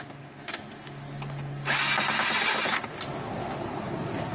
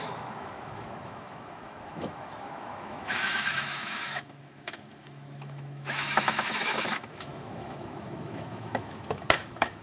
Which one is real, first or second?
first